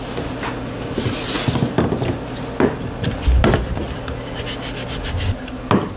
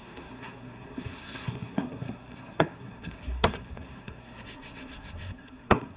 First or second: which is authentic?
first